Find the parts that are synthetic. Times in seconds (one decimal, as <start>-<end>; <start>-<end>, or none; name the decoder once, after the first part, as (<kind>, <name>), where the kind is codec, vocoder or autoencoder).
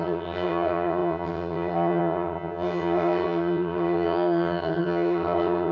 0.0-5.7 (vocoder, HiFi-GAN)